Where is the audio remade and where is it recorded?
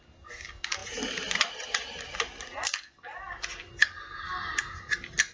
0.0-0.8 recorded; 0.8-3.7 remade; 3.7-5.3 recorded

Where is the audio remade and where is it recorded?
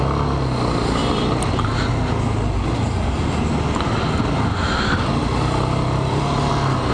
0.0-1.0 recorded; 1.0-1.9 remade; 1.9-5.2 recorded; 5.2-6.5 remade; 6.5-6.9 recorded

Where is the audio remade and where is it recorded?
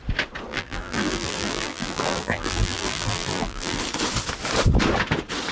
0.0-0.5 recorded; 0.5-3.8 remade; 3.8-5.5 recorded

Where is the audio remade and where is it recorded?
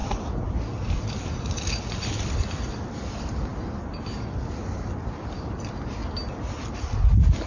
0.0-6.0 remade; 6.0-6.8 recorded; 6.8-7.5 remade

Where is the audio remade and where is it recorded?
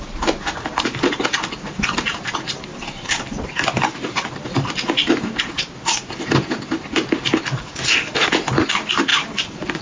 0.0-2.7 recorded; 2.7-4.7 remade; 4.7-9.1 recorded; 9.1-9.8 remade